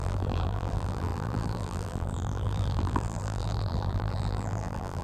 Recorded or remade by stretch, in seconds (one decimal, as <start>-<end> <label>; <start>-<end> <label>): 0.0-5.0 remade